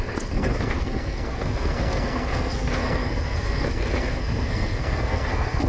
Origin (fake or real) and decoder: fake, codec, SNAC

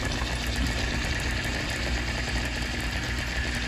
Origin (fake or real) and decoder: real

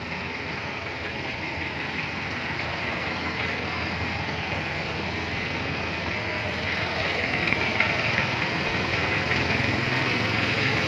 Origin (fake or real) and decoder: fake, codec, SNAC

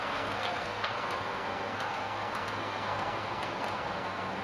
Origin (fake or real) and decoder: fake, codec, SNAC